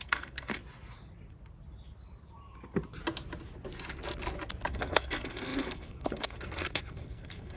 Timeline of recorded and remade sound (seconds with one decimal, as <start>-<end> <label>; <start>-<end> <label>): 0.0-0.6 remade; 0.6-4.7 recorded; 4.7-7.6 remade